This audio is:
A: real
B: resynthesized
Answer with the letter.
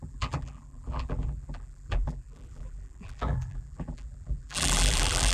B